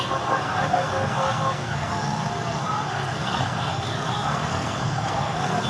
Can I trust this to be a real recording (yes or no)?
no